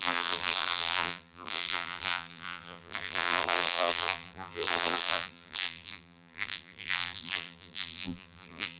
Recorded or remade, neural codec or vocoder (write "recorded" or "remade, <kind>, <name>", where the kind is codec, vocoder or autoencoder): remade, vocoder, BigVGAN v2